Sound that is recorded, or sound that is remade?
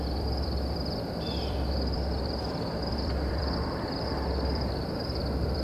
remade